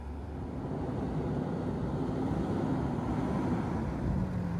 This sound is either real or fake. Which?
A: real